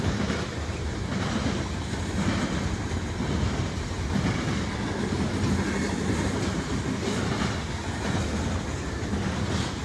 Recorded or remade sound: recorded